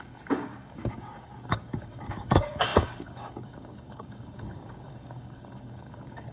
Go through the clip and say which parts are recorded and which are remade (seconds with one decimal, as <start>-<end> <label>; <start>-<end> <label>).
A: 0.0-6.3 remade